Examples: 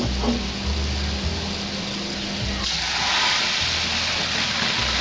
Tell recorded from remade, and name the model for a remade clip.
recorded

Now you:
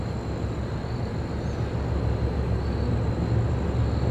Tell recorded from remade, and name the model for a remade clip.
recorded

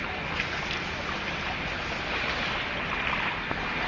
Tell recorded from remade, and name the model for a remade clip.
recorded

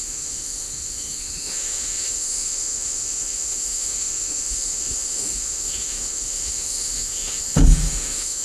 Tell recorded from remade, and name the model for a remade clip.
remade, autoencoder, DAC-VAE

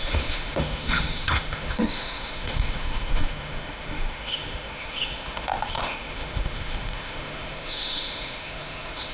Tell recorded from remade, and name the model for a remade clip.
remade, autoencoder, DAC-VAE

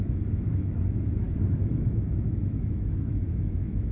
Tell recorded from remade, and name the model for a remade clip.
remade, autoencoder, DAC-VAE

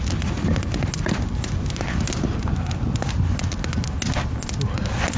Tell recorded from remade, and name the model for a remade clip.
recorded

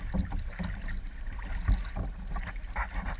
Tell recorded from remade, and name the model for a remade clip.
recorded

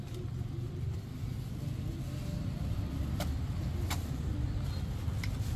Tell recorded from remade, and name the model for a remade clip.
recorded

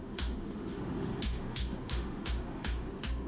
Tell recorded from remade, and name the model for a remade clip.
remade, autoencoder, DAC-VAE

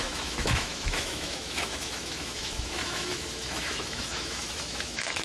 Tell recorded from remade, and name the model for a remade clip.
remade, autoencoder, DAC-VAE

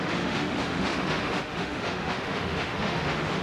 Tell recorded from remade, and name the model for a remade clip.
remade, autoencoder, DAC-VAE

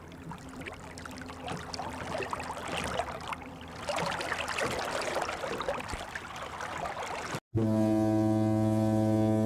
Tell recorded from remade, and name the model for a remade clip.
recorded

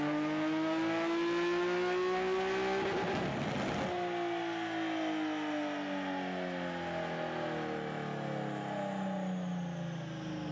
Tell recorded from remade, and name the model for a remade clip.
recorded